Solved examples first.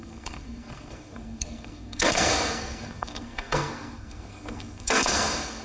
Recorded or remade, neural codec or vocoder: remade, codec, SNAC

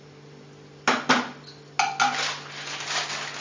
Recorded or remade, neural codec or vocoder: recorded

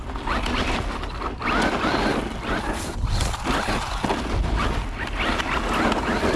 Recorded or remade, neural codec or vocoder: recorded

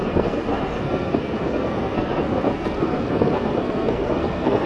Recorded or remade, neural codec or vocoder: remade, codec, SNAC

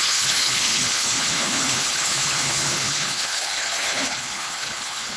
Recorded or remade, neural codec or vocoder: remade, codec, HILCodec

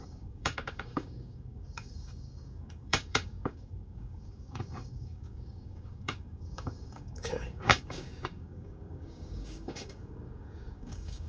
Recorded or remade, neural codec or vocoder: remade, codec, DAC